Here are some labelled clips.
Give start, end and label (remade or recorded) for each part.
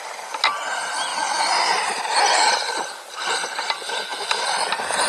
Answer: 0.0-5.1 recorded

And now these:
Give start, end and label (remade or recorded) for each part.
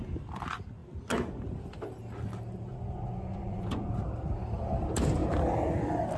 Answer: 0.0-2.7 recorded; 2.7-3.9 remade; 3.9-6.2 recorded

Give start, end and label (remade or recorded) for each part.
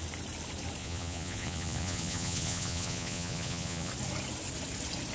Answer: 0.0-0.8 recorded; 0.8-3.9 remade; 3.9-5.1 recorded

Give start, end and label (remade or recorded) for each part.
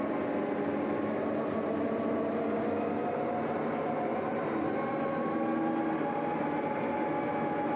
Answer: 0.0-7.8 recorded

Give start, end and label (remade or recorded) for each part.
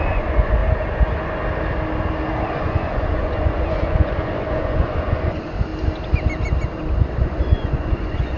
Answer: 0.0-0.6 remade; 0.6-2.5 recorded; 2.5-5.7 remade; 5.7-7.0 recorded; 7.0-8.4 remade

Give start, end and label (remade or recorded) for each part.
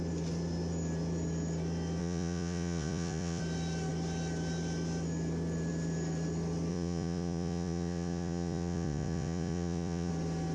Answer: 0.0-2.0 recorded; 2.0-3.4 remade; 3.4-6.7 recorded; 6.7-10.1 remade; 10.1-10.5 recorded